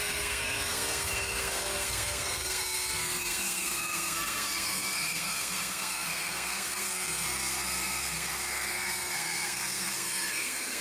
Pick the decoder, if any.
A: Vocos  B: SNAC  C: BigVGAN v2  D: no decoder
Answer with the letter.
B